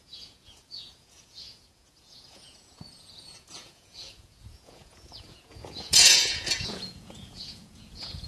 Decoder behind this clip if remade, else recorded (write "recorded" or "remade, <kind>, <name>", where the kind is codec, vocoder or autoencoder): remade, vocoder, Vocos